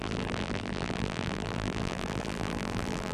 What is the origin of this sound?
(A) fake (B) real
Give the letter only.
A